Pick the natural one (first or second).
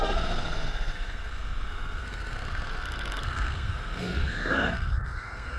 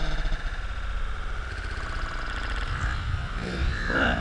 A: second